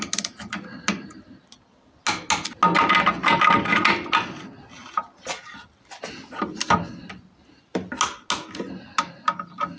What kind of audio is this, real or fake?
real